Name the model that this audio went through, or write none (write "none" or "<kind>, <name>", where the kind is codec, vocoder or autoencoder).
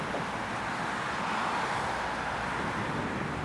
none